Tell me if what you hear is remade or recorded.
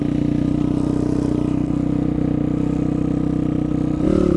recorded